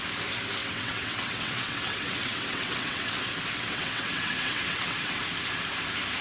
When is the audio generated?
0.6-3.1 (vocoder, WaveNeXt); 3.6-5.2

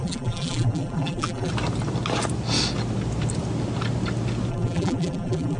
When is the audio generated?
0.0-1.5 (vocoder, BigVGAN v2); 4.5-5.6

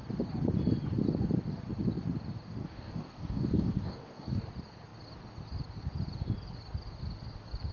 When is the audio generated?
2.6-4.5 (codec, DAC)

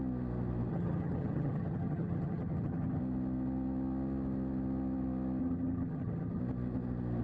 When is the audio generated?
0.7-3.0 (vocoder, HiFi-GAN); 5.4-6.4

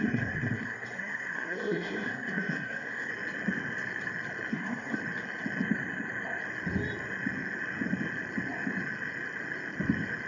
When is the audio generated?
0.0-3.1 (codec, SNAC); 4.5-5.0